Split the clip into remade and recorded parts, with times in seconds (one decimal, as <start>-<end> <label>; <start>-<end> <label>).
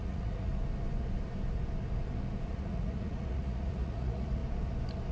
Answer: 0.0-0.5 remade; 0.5-2.5 recorded; 2.5-4.4 remade; 4.4-5.1 recorded